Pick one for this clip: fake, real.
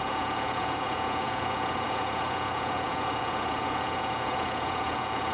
fake